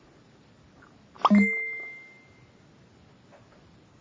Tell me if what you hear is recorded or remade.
recorded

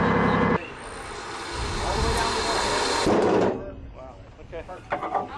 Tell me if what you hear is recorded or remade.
recorded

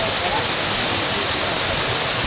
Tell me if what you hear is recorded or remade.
recorded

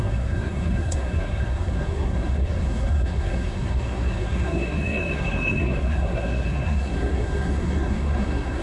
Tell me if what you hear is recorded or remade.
remade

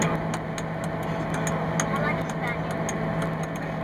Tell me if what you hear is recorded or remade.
recorded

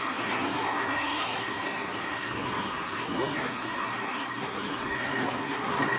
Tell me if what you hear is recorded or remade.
remade